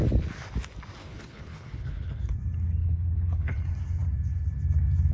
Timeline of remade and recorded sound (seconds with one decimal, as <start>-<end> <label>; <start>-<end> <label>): 0.0-1.0 recorded; 1.0-2.3 remade; 2.3-2.8 recorded; 2.8-3.6 remade; 3.6-5.1 recorded